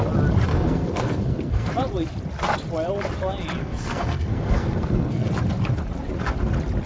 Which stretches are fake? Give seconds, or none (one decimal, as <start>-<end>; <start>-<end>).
0.5-1.7; 3.6-5.3